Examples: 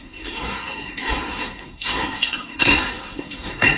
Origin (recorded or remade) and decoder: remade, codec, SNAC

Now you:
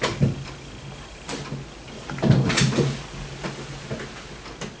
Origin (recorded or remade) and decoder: recorded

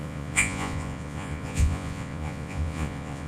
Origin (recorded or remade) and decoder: remade, vocoder, Vocos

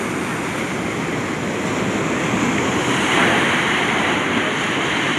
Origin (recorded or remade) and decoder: recorded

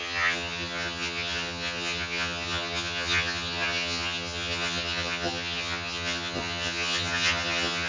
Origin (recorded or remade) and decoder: remade, vocoder, HiFi-GAN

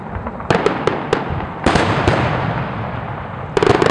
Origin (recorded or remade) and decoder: recorded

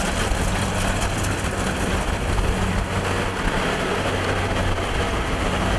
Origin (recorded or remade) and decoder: recorded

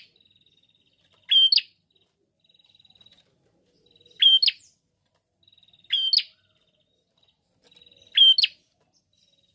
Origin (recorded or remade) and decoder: recorded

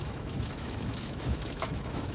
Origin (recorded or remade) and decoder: remade, autoencoder, DAC-VAE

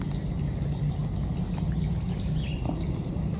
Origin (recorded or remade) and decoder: recorded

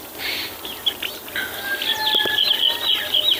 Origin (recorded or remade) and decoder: recorded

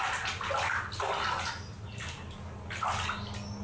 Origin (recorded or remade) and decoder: recorded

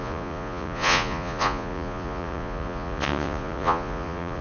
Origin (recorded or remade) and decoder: remade, vocoder, Vocos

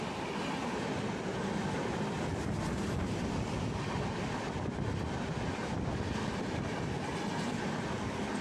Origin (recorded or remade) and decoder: recorded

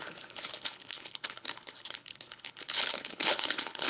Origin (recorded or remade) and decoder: remade, codec, HILCodec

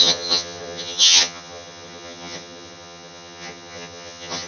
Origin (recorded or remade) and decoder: remade, vocoder, HiFi-GAN